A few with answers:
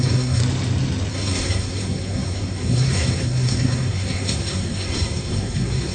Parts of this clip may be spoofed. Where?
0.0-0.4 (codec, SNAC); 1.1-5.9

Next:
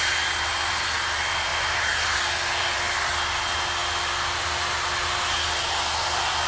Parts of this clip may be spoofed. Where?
none

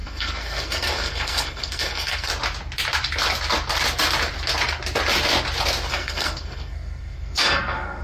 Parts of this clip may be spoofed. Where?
0.0-2.3 (codec, SNAC); 5.9-8.0

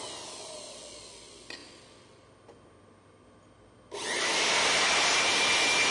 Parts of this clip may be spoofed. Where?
none

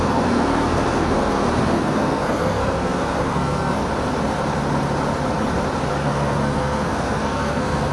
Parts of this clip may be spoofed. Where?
0.0-3.8 (codec, SNAC); 5.9-7.9

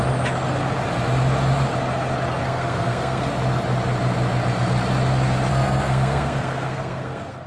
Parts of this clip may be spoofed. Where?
2.4-3.3 (codec, SNAC); 5.5-7.5